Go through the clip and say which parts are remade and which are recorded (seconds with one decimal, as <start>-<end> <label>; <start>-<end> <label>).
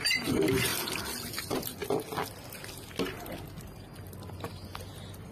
0.0-0.7 remade; 0.7-1.4 recorded; 1.4-1.8 remade; 1.8-5.3 recorded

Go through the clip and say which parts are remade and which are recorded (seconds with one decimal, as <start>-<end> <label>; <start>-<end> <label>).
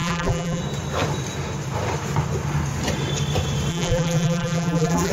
0.0-0.6 remade; 0.6-3.7 recorded; 3.7-5.1 remade